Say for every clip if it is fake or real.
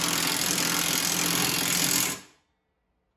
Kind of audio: real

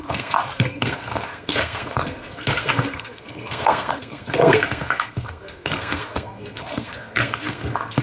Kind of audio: fake